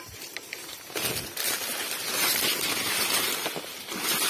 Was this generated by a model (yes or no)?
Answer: no